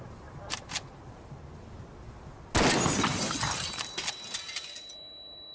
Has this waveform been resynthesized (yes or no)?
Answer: no